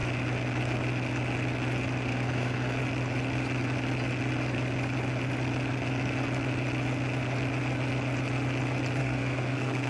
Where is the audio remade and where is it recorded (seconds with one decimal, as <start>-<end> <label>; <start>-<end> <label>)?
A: 0.0-2.1 recorded; 2.1-2.8 remade; 2.8-9.0 recorded; 9.0-9.9 remade